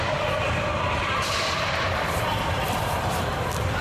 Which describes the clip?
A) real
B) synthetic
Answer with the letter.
B